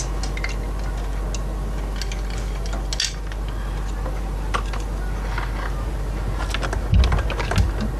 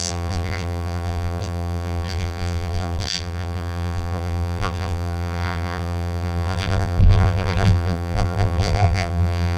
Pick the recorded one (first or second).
first